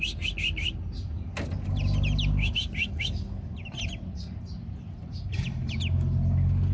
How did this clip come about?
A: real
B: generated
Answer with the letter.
A